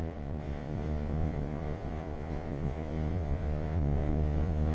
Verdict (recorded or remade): remade